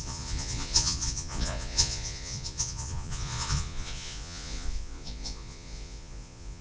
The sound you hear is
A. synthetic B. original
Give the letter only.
A